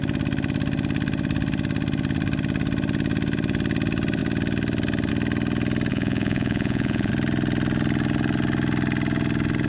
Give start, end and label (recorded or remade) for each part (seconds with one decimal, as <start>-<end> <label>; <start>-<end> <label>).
0.0-5.9 recorded; 5.9-7.1 remade; 7.1-9.7 recorded